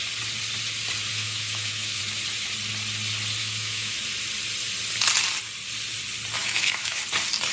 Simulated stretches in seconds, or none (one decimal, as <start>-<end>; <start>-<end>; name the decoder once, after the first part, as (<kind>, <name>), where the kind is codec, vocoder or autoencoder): 1.1-2.0 (autoencoder, DAC-VAE); 3.4-4.0; 6.4-7.0